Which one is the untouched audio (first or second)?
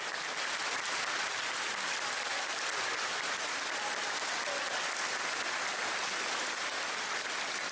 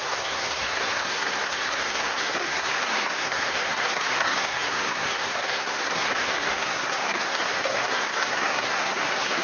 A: first